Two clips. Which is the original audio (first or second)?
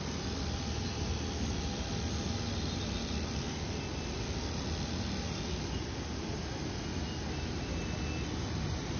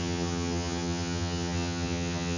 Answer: first